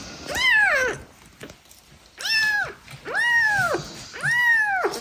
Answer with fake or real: real